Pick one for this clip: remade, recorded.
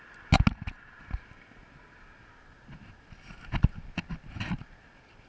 recorded